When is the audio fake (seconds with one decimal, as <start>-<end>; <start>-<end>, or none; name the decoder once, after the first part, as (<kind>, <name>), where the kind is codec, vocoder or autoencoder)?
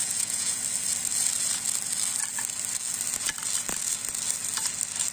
0.0-0.6 (vocoder, Vocos)